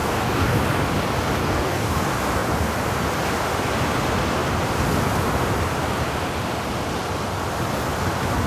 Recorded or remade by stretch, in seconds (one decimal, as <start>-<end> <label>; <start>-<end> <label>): 0.0-0.6 remade; 0.6-1.4 recorded; 1.4-2.0 remade; 2.0-8.5 recorded